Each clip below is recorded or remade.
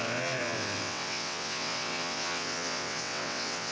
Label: remade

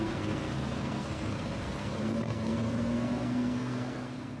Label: remade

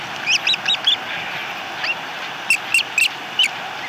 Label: recorded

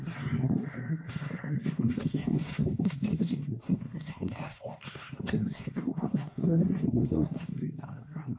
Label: remade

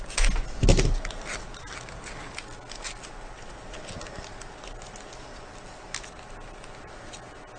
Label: recorded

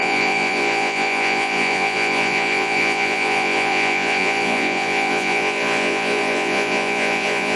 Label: remade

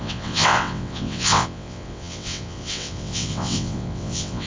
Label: remade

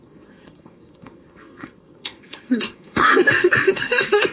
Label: remade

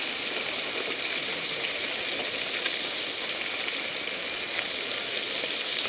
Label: recorded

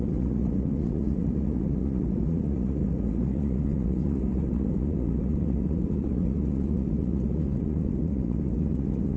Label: remade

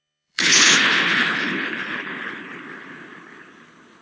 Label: remade